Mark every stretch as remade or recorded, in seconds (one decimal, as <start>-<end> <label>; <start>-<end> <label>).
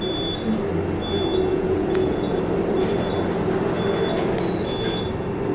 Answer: 0.0-1.5 recorded; 1.5-2.4 remade; 2.4-5.5 recorded